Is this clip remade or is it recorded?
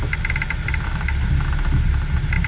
recorded